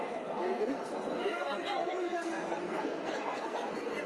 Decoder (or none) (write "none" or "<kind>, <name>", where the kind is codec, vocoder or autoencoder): codec, SNAC